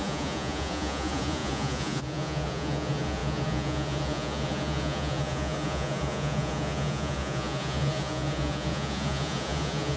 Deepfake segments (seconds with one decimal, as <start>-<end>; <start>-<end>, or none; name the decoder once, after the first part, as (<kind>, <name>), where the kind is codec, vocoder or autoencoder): 0.0-10.0 (vocoder, Vocos)